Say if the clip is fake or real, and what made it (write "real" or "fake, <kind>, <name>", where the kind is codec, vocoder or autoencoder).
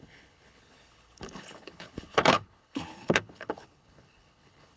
fake, codec, HILCodec